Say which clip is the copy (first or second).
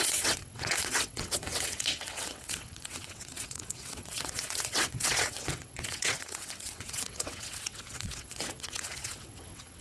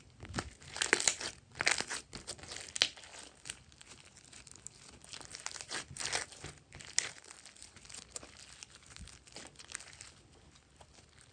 first